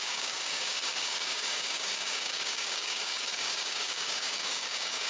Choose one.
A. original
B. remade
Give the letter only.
B